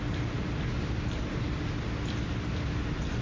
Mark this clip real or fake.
real